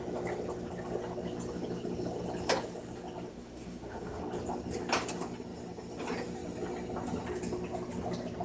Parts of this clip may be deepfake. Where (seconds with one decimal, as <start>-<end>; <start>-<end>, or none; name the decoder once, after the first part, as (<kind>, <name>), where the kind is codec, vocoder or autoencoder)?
3.3-4.2 (autoencoder, DAC-VAE)